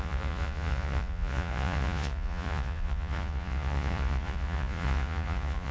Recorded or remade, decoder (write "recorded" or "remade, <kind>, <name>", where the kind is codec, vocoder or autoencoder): remade, vocoder, Vocos